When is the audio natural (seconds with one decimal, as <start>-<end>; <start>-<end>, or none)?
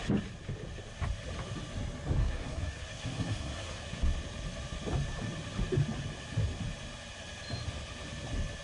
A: 0.0-2.2; 3.8-8.6